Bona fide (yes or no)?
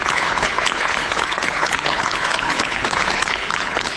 no